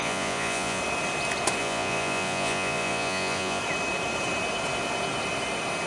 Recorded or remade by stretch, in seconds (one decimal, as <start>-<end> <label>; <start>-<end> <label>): 0.0-0.8 remade; 0.8-1.6 recorded; 1.6-3.6 remade; 3.6-5.9 recorded